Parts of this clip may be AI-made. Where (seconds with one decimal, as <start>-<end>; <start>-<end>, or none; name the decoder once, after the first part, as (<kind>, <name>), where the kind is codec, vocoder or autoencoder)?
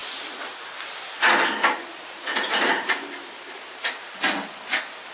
none